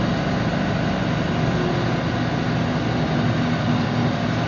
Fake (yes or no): no